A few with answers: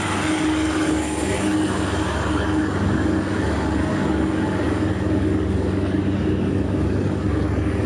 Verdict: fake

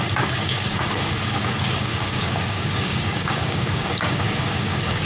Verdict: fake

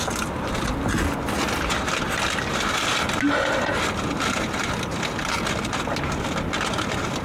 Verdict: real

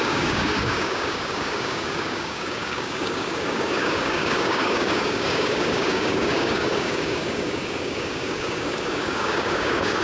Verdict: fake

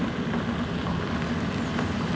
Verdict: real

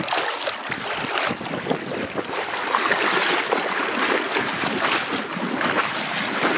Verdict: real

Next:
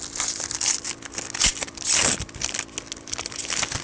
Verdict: real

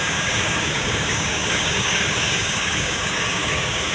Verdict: fake